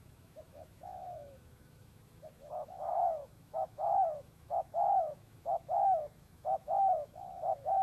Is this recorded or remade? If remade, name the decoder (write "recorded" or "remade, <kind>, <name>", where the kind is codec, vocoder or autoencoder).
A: remade, autoencoder, DAC-VAE